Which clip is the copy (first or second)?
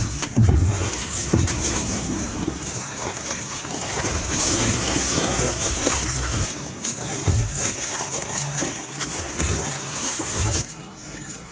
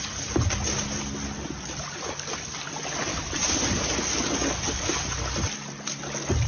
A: first